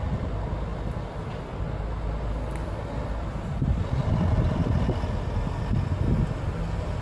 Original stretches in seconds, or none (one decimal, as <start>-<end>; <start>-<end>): 0.0-7.0